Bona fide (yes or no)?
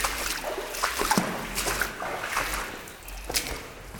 yes